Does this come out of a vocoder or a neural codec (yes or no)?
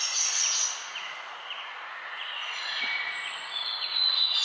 yes